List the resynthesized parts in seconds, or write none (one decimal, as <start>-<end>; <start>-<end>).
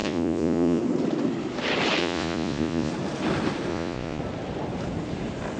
0.0-0.8; 2.0-2.9; 3.7-4.2